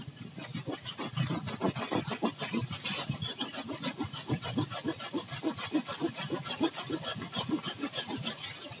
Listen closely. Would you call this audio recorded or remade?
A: recorded